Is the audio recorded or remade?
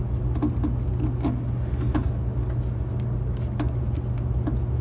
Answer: recorded